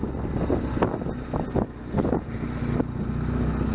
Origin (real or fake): real